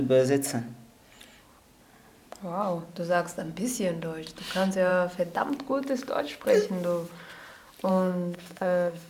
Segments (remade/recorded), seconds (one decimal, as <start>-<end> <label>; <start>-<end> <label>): 0.0-7.9 recorded; 7.9-9.1 remade